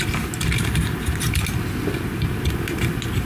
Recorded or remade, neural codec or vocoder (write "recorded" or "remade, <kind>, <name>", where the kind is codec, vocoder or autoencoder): recorded